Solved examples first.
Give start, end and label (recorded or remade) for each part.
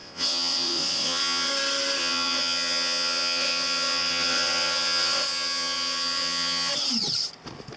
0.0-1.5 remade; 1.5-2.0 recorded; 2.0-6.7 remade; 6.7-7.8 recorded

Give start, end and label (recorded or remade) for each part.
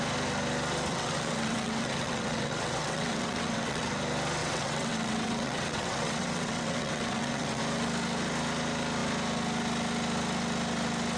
0.0-0.9 recorded; 0.9-3.9 remade; 3.9-4.4 recorded; 4.4-7.6 remade; 7.6-11.2 recorded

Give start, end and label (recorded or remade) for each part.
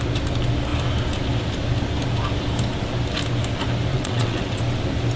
0.0-3.9 recorded; 3.9-4.6 remade; 4.6-5.2 recorded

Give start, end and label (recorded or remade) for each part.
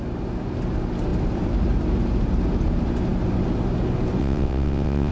0.0-4.2 recorded; 4.2-5.1 remade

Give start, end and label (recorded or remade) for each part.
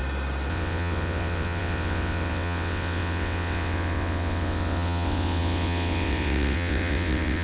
0.0-0.5 recorded; 0.5-7.4 remade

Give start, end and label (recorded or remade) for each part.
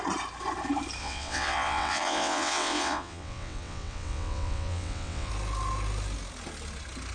0.0-1.0 recorded; 1.0-5.3 remade; 5.3-7.1 recorded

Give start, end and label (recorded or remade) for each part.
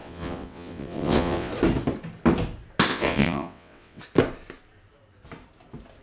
0.0-1.5 remade; 1.5-2.9 recorded; 2.9-4.0 remade; 4.0-6.0 recorded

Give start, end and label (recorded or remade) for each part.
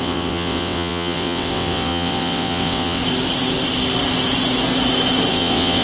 0.0-3.0 remade; 3.0-5.3 recorded; 5.3-5.8 remade